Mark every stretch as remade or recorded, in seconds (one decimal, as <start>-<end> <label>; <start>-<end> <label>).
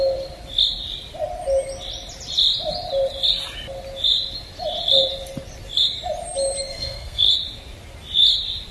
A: 0.0-6.7 recorded; 6.7-7.3 remade; 7.3-8.7 recorded